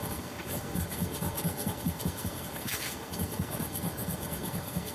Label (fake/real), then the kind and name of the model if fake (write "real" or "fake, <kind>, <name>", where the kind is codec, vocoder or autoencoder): fake, codec, SNAC